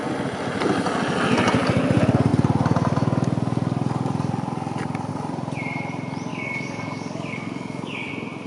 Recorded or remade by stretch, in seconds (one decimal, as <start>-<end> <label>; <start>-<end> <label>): 0.0-6.3 recorded; 6.3-8.1 remade; 8.1-8.5 recorded